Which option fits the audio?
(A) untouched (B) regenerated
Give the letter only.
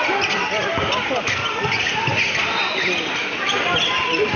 A